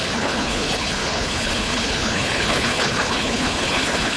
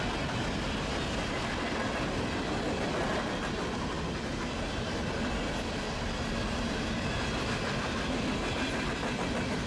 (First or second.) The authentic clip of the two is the second